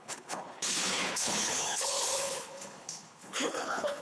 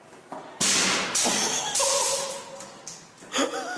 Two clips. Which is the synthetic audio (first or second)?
first